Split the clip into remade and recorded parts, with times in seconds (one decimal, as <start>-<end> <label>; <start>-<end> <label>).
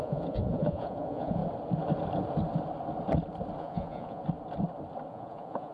0.0-1.4 remade; 1.4-3.6 recorded; 3.6-4.2 remade; 4.2-5.1 recorded; 5.1-5.7 remade